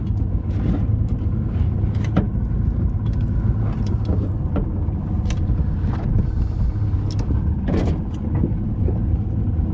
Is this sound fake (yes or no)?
no